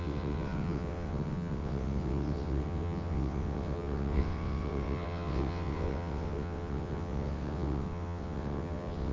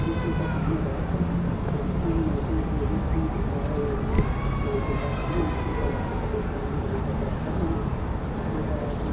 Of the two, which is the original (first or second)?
second